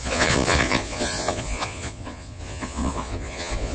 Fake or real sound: fake